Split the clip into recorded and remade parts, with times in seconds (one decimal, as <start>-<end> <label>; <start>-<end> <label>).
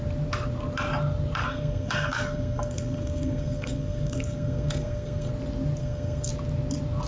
0.0-1.4 recorded; 1.4-5.3 remade; 5.3-5.8 recorded; 5.8-6.3 remade; 6.3-7.1 recorded